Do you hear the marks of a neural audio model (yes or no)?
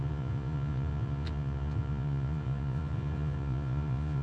yes